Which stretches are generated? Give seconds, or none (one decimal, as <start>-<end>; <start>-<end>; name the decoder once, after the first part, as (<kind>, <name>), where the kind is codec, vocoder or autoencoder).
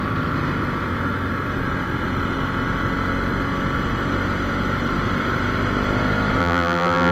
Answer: 6.4-7.1 (vocoder, BigVGAN v2)